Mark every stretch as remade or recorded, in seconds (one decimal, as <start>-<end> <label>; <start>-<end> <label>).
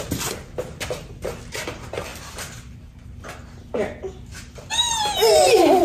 0.0-5.8 recorded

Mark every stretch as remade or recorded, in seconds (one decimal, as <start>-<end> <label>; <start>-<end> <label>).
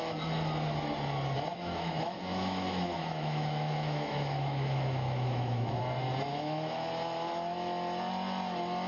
0.0-1.5 recorded; 1.5-5.8 remade; 5.8-6.3 recorded; 6.3-6.9 remade; 6.9-8.9 recorded